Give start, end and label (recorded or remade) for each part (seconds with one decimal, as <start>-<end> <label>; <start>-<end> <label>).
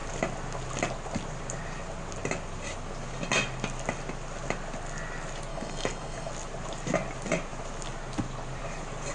0.0-5.5 recorded; 5.5-6.3 remade; 6.3-9.1 recorded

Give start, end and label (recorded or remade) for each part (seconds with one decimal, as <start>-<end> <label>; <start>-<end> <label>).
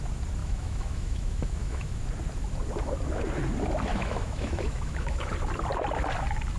0.0-0.4 recorded; 0.4-2.0 remade; 2.0-3.9 recorded; 3.9-5.3 remade; 5.3-6.6 recorded